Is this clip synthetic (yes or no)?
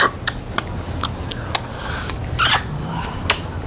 no